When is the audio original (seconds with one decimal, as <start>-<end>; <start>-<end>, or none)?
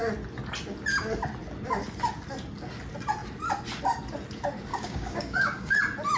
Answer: 0.0-4.7; 5.8-6.2